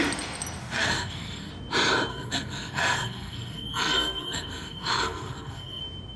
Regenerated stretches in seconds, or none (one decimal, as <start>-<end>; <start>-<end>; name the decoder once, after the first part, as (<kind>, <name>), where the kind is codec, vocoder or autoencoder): 0.6-1.5 (codec, SNAC); 2.1-5.8